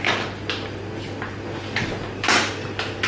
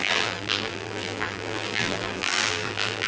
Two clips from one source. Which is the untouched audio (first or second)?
first